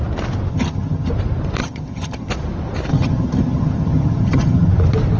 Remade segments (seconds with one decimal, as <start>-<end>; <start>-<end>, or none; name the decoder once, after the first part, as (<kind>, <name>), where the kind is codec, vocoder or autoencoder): 0.5-1.1 (vocoder, HiFi-GAN); 1.6-2.3; 2.9-4.7